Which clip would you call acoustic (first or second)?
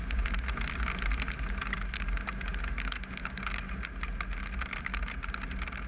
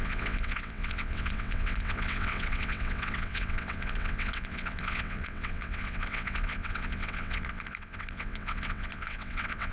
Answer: first